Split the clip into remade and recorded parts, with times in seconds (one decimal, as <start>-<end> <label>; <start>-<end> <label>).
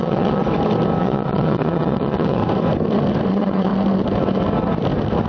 0.0-0.4 remade; 0.4-1.0 recorded; 1.0-2.4 remade; 2.4-3.3 recorded; 3.3-3.7 remade; 3.7-5.3 recorded